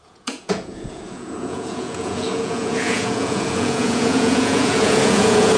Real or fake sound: fake